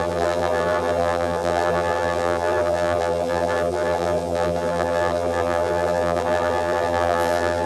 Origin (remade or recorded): remade